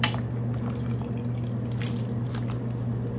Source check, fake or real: real